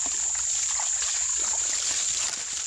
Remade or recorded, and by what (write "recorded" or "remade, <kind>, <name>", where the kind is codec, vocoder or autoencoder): recorded